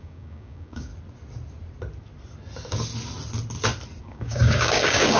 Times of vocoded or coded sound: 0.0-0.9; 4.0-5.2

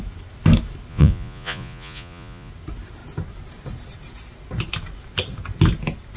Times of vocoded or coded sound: 0.9-2.5